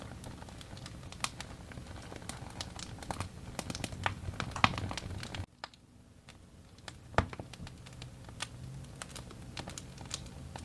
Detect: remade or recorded recorded